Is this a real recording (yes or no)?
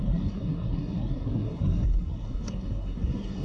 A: no